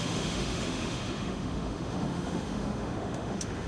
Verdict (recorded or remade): remade